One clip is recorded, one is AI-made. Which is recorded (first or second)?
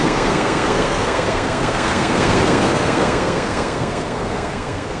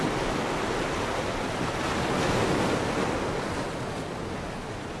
second